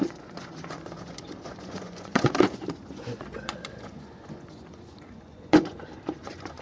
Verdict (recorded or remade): remade